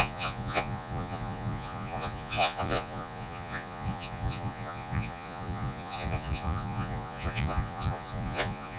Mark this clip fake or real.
fake